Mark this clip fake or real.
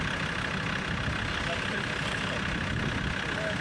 real